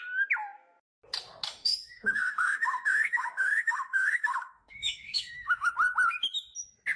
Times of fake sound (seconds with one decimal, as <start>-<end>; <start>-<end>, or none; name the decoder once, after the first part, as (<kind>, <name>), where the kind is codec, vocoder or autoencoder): 1.5-5.7 (autoencoder, DAC-VAE)